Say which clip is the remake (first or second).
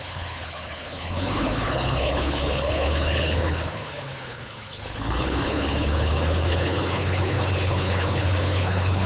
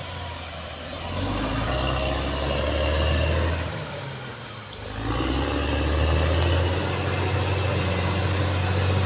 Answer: first